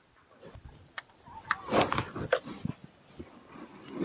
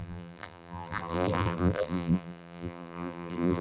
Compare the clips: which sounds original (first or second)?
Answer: first